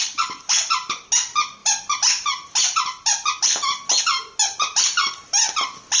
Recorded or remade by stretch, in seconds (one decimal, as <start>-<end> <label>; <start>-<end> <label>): 0.0-6.0 recorded